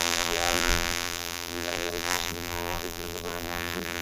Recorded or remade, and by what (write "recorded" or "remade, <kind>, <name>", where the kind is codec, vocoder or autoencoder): remade, vocoder, BigVGAN v2